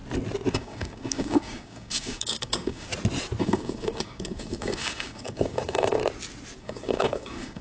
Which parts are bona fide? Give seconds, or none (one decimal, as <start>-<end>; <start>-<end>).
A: 0.0-0.5; 2.9-3.4; 6.0-6.6